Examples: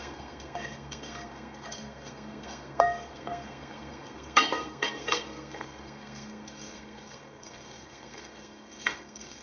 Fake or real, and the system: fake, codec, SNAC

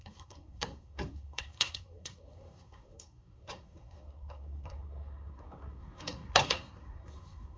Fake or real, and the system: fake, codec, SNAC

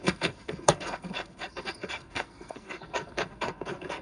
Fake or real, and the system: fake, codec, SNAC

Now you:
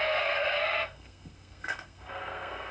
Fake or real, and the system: fake, codec, SNAC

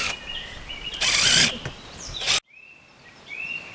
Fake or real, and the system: real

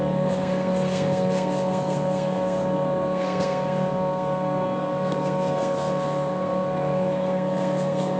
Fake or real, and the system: fake, codec, SNAC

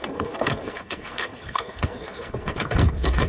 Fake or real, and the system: fake, codec, SNAC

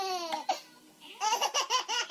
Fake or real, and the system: real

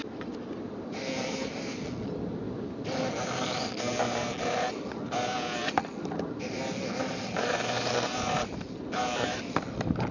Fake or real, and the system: real